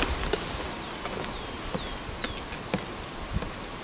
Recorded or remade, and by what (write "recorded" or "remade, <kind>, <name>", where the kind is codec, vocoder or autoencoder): recorded